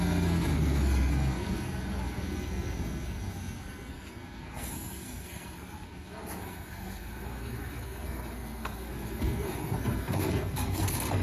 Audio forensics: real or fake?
fake